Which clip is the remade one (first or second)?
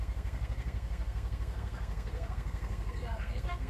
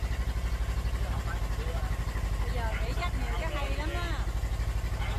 first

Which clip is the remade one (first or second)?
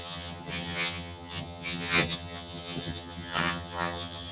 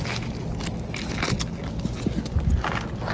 first